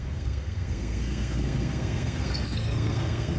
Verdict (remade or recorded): remade